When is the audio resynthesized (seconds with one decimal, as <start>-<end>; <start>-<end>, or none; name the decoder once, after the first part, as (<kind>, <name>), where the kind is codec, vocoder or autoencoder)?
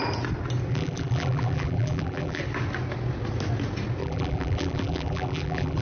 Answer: 0.7-2.4 (vocoder, BigVGAN v2); 4.0-5.8